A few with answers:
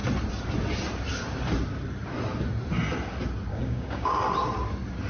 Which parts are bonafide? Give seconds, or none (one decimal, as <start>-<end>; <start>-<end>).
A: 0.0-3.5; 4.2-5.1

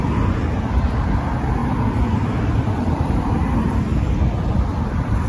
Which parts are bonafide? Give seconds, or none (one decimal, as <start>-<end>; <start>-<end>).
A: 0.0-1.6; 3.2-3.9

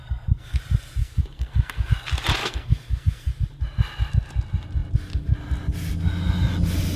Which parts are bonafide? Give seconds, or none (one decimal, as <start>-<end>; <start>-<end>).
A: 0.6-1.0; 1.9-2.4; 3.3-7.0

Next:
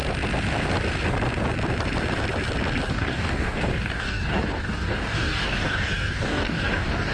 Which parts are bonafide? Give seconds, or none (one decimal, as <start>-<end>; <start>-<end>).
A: 0.0-2.9

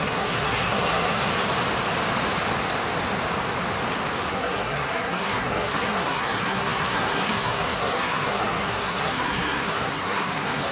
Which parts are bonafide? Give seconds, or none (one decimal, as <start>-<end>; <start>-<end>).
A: 1.3-4.3